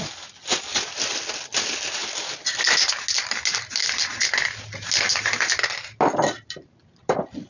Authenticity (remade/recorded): recorded